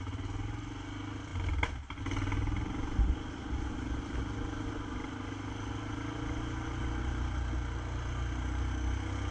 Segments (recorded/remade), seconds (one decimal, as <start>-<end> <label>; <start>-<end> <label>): 0.0-9.3 recorded